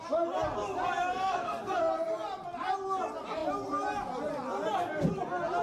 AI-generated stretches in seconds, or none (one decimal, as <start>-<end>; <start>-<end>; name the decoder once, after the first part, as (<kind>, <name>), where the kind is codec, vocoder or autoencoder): 1.1-1.8 (codec, SNAC)